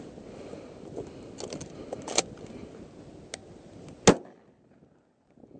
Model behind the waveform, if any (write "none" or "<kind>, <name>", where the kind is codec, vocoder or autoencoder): none